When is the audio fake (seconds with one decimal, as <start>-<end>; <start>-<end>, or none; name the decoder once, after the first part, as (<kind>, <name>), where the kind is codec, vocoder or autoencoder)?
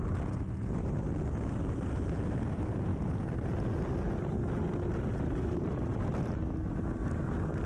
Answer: none